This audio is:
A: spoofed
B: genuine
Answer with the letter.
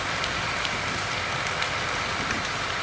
B